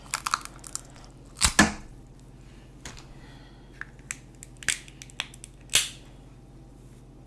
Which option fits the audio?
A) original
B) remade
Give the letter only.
A